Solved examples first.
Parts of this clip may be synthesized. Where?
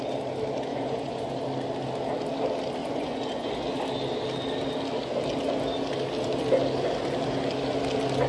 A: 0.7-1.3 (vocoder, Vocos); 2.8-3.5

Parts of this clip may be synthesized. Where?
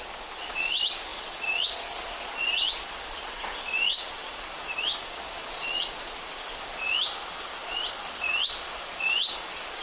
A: 0.0-9.8 (vocoder, Vocos)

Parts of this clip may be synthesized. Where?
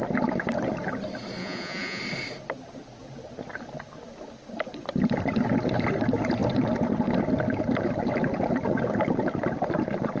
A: 1.4-2.0 (vocoder, Vocos)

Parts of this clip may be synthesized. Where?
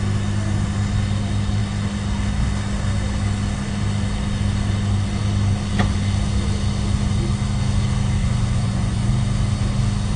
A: 8.2-9.1 (vocoder, Vocos)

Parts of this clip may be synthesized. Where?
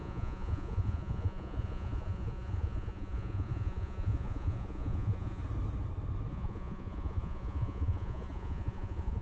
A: 0.0-5.4 (vocoder, Vocos); 6.3-9.2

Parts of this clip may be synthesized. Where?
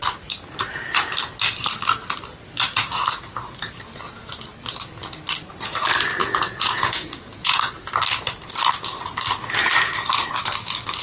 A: 6.2-7.6 (vocoder, Vocos)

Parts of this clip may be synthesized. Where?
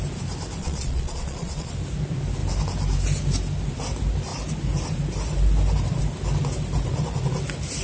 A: 0.6-1.7 (vocoder, Vocos)